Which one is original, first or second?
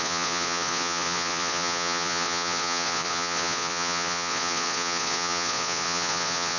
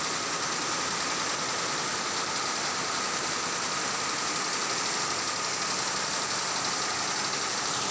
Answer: second